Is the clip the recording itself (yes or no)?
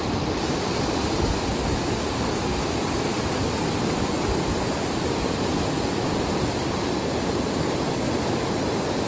yes